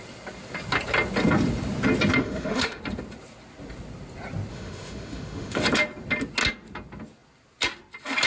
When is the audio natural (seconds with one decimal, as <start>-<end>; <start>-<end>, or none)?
0.0-2.2; 2.8-4.5; 5.6-8.3